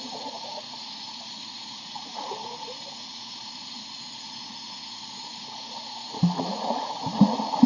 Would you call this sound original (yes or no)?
no